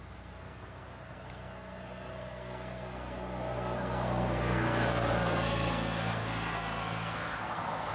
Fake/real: fake